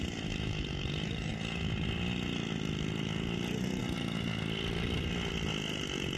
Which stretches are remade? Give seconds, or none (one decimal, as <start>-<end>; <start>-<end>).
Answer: none